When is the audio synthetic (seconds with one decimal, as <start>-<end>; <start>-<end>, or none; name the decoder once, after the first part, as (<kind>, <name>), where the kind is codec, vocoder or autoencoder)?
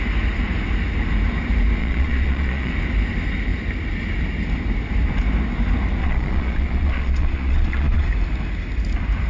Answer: 1.8-2.7 (vocoder, Vocos); 6.0-8.1